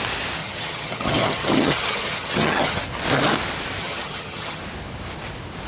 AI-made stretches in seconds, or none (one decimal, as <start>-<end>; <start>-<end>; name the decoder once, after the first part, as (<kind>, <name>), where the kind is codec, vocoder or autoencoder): 0.4-2.8 (vocoder, HiFi-GAN); 3.8-4.6